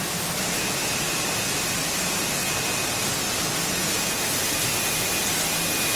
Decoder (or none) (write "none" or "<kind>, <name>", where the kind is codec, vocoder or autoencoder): none